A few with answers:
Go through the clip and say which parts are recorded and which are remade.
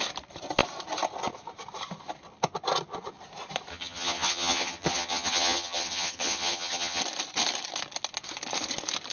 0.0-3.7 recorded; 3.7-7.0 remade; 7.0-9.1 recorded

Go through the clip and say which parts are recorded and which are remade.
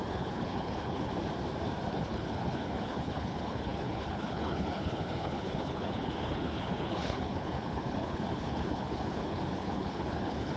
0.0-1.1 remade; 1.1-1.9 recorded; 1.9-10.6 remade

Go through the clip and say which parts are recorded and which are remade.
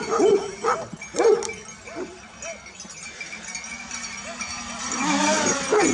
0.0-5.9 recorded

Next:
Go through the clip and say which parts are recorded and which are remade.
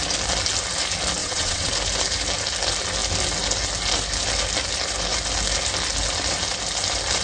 0.0-1.2 recorded; 1.2-1.7 remade; 1.7-7.2 recorded